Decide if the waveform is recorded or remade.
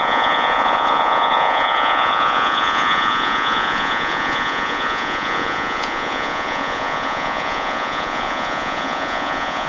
remade